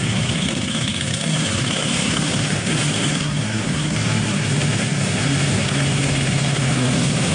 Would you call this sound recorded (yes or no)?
no